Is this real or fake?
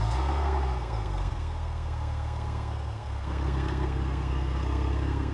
fake